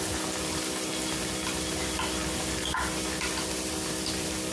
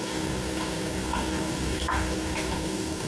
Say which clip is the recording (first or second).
first